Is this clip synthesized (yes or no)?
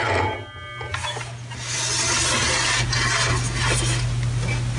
no